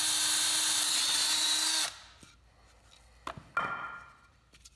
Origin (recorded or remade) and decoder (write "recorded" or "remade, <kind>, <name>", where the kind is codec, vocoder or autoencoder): recorded